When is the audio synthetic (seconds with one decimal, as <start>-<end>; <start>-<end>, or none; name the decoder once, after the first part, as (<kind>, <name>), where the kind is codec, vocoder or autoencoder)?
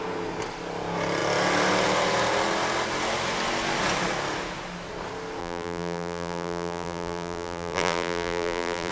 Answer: 5.4-8.9 (vocoder, BigVGAN v2)